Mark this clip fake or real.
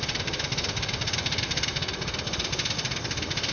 real